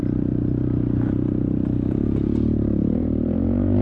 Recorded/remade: remade